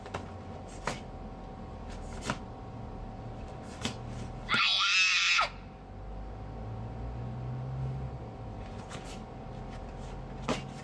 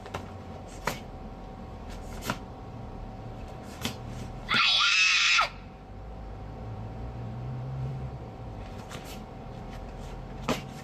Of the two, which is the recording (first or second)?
first